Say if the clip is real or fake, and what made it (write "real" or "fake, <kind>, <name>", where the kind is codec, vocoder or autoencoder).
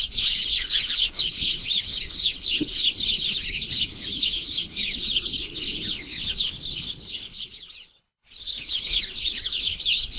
fake, codec, HILCodec